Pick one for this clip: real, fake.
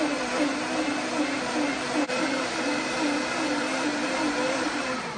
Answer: fake